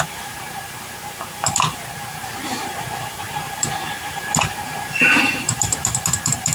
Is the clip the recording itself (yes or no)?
no